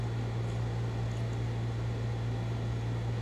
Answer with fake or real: real